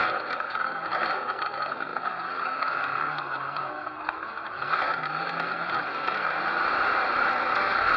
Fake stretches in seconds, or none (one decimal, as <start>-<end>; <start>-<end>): 0.0-6.4; 7.3-8.0